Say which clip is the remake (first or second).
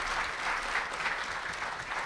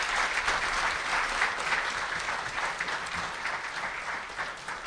second